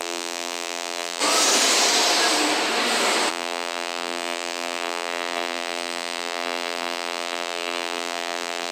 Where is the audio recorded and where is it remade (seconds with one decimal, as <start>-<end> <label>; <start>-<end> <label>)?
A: 0.0-1.2 remade; 1.2-3.3 recorded; 3.3-8.7 remade